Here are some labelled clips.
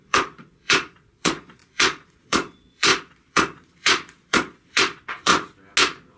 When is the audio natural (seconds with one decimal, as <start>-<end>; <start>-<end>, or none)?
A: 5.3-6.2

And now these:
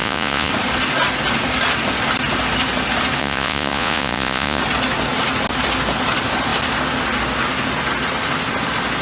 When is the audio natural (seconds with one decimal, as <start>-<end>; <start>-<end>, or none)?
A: 0.5-3.2; 4.6-9.0

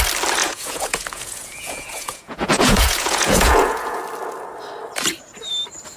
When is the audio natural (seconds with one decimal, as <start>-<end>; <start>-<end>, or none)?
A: 0.0-0.4; 4.0-6.0

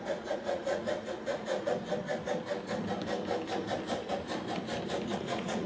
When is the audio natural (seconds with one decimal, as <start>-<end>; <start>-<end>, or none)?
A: 1.7-5.1